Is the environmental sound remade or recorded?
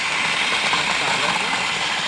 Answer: recorded